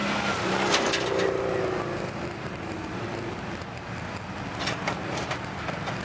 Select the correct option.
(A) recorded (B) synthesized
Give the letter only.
A